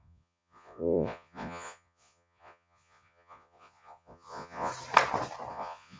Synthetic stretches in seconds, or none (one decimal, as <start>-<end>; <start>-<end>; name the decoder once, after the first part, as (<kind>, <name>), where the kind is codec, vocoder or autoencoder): 0.0-4.7 (vocoder, Vocos); 5.5-6.0